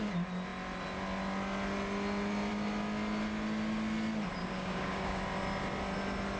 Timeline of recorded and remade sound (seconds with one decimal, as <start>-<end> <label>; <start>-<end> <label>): 0.0-4.4 recorded; 4.4-5.2 remade; 5.2-6.4 recorded